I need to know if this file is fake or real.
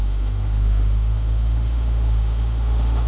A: fake